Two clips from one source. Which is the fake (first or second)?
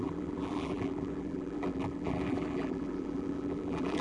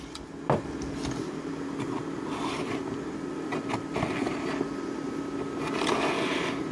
first